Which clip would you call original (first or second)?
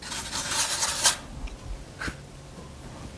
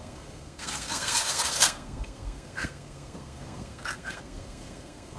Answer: first